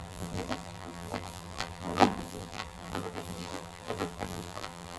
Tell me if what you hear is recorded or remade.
remade